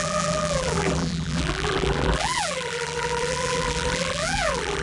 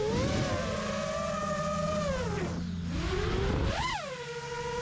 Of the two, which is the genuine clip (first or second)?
second